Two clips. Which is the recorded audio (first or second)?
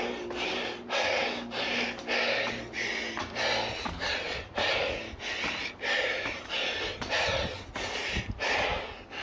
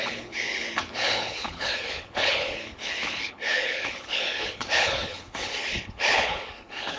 first